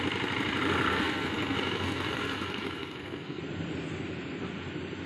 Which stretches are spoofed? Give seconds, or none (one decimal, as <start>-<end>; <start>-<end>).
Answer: 0.9-3.4